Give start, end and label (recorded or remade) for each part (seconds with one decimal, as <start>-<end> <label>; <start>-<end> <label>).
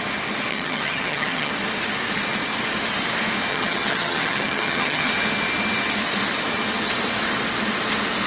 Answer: 0.0-0.5 recorded; 0.5-1.5 remade; 1.5-3.5 recorded; 3.5-5.1 remade; 5.1-8.3 recorded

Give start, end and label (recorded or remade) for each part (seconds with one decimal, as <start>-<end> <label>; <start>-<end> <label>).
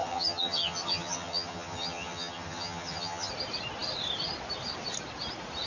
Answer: 0.0-3.3 remade; 3.3-5.7 recorded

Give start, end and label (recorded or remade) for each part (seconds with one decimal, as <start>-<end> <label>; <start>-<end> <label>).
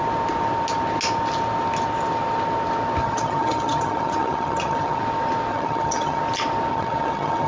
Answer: 0.0-3.0 recorded; 3.0-5.0 remade; 5.0-5.5 recorded; 5.5-6.2 remade; 6.2-6.7 recorded; 6.7-7.5 remade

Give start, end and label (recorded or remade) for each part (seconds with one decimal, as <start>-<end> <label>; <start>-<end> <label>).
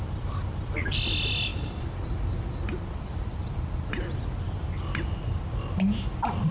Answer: 0.0-6.5 recorded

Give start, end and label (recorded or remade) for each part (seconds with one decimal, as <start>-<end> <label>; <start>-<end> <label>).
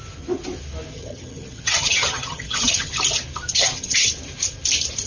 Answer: 0.0-0.9 recorded; 0.9-2.9 remade; 2.9-3.5 recorded; 3.5-4.1 remade; 4.1-5.1 recorded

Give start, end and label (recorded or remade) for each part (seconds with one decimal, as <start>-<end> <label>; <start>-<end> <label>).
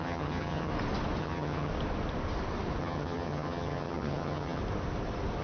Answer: 0.0-0.7 remade; 0.7-1.2 recorded; 1.2-1.7 remade; 1.7-2.8 recorded; 2.8-4.6 remade; 4.6-5.4 recorded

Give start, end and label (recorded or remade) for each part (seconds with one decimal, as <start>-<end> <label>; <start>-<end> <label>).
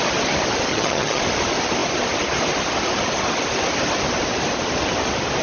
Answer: 0.0-0.7 recorded; 0.7-1.2 remade; 1.2-5.4 recorded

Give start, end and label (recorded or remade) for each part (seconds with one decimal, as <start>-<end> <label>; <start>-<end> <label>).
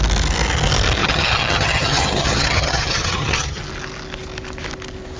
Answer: 0.0-1.0 recorded; 1.0-3.6 remade; 3.6-5.2 recorded